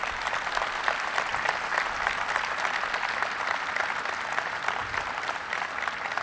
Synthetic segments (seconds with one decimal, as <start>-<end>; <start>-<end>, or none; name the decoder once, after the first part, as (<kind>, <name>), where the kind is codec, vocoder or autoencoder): none